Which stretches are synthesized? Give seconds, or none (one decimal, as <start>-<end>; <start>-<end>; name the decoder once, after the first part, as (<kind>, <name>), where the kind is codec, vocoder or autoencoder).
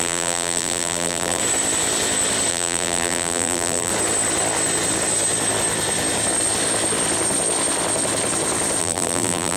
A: 0.0-1.4 (vocoder, BigVGAN v2); 2.5-3.9; 8.8-9.6